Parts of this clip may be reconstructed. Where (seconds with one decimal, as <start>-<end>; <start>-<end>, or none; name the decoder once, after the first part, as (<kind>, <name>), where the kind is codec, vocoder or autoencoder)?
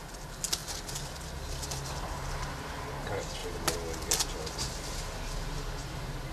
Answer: none